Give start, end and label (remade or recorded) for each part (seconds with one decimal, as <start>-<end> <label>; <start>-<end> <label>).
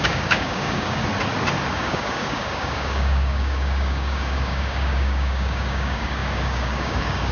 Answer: 0.0-1.0 remade; 1.0-1.7 recorded; 1.7-7.3 remade